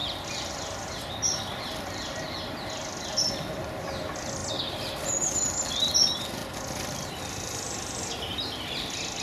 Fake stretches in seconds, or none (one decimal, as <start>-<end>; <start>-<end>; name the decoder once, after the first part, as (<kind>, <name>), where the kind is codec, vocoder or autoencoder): 0.0-4.4 (vocoder, BigVGAN v2); 5.4-6.4; 7.1-9.2